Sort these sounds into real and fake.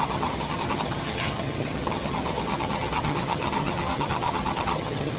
fake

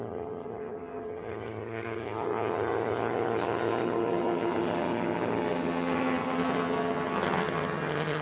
fake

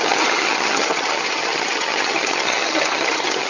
fake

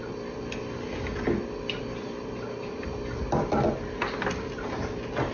real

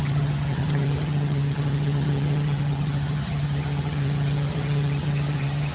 fake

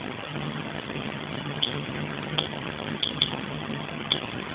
fake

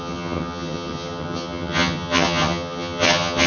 fake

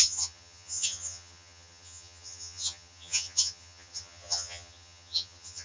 fake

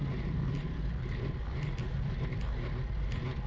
real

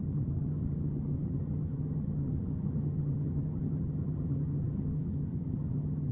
fake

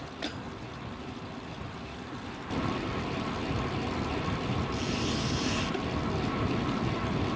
real